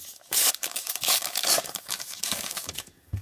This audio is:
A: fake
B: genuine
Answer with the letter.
A